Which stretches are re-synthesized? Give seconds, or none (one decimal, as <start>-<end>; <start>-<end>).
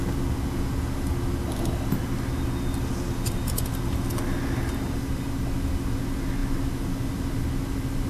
none